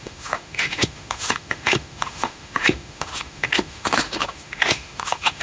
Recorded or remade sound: remade